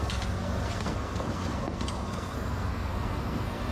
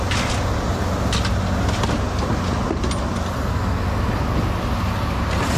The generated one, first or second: first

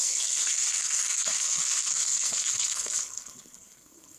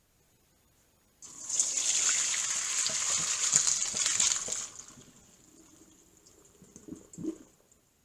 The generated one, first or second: first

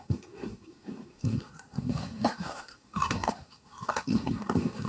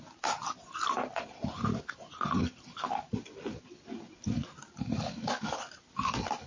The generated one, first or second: first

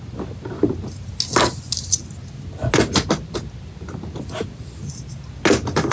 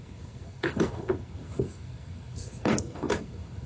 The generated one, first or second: second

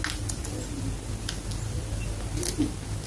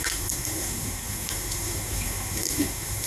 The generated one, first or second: second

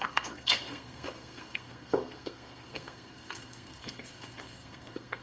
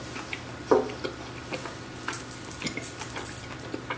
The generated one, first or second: first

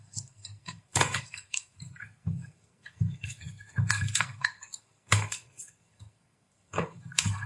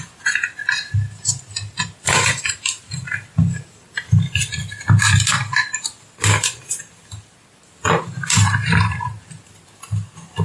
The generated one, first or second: first